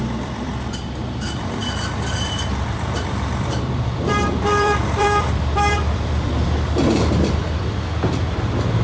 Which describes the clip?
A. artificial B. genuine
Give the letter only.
A